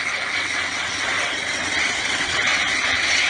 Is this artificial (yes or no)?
yes